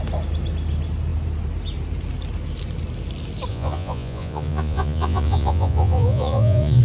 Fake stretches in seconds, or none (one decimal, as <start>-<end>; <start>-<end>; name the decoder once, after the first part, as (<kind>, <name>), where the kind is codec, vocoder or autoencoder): 3.5-6.8 (vocoder, Vocos)